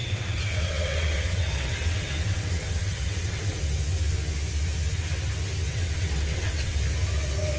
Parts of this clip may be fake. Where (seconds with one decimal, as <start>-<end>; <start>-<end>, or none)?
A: 0.0-3.6; 5.7-6.8